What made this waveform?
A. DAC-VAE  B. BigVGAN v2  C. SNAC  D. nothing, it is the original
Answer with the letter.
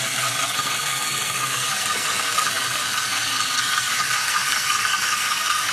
C